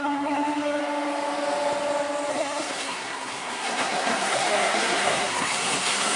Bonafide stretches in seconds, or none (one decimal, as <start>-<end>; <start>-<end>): 0.8-2.3